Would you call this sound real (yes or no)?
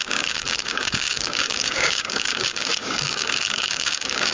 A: no